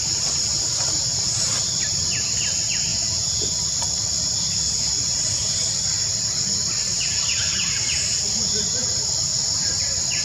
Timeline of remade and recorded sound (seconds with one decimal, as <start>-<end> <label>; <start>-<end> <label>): 0.0-2.9 recorded; 2.9-3.5 remade; 3.5-10.2 recorded